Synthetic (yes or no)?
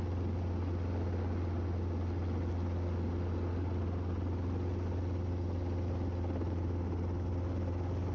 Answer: no